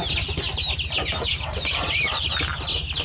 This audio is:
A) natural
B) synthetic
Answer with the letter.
A